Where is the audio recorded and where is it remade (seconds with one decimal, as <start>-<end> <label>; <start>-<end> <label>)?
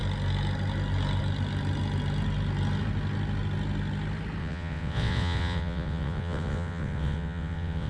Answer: 0.0-4.4 recorded; 4.4-7.9 remade